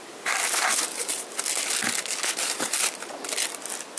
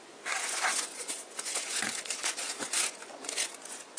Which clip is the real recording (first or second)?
first